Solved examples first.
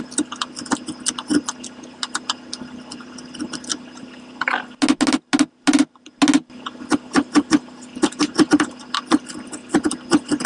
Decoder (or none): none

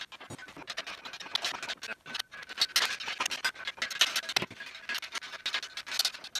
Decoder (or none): none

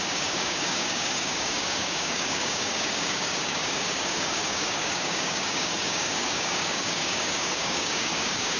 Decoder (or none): codec, DAC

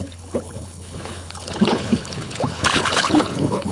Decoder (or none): codec, HILCodec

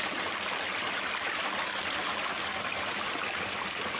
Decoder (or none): none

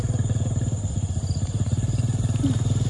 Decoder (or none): none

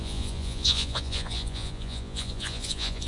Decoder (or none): vocoder, Vocos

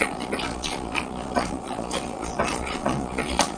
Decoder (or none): vocoder, Vocos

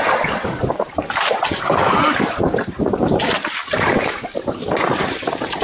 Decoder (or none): vocoder, BigVGAN v2